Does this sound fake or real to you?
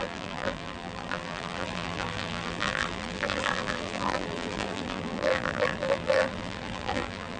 fake